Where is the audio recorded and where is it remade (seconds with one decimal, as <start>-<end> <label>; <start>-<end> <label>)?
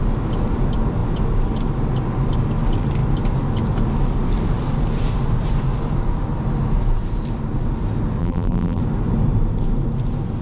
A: 0.0-8.2 recorded; 8.2-8.8 remade; 8.8-10.4 recorded